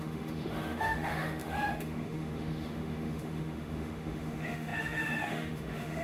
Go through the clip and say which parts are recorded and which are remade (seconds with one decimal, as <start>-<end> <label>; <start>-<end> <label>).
0.0-6.0 remade